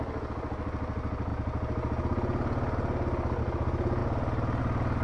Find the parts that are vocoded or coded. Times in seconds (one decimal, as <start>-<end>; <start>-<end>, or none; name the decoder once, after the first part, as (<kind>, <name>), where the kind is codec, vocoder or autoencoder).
none